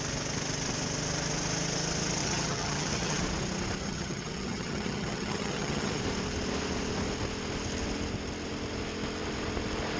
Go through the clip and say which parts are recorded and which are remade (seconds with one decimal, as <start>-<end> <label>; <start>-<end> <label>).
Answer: 0.0-2.2 recorded; 2.2-3.2 remade; 3.2-3.8 recorded; 3.8-6.0 remade; 6.0-10.0 recorded